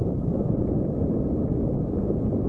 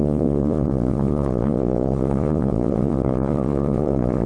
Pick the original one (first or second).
first